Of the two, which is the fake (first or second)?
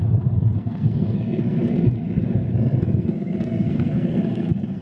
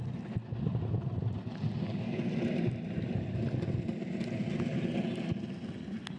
first